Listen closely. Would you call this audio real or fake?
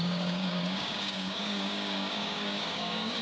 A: fake